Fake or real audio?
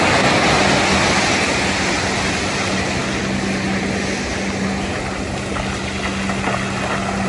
real